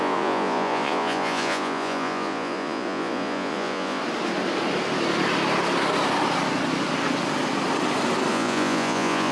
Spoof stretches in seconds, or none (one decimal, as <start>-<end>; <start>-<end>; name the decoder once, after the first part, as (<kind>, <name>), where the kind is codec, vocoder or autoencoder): 0.0-4.0 (vocoder, Vocos); 8.3-9.3